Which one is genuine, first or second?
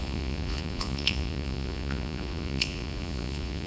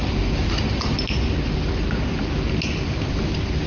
second